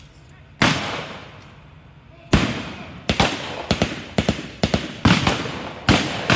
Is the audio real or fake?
real